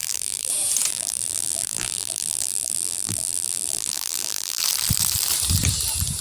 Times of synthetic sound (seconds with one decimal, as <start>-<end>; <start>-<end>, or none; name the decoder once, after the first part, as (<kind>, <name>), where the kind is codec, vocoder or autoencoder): 0.0-0.5 (vocoder, BigVGAN v2); 0.9-4.6